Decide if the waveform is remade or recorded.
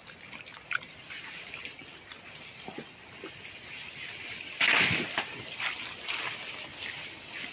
recorded